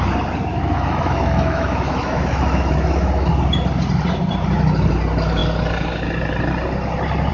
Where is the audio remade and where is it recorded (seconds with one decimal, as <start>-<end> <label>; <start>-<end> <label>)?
0.0-0.5 recorded; 0.5-3.3 remade; 3.3-7.3 recorded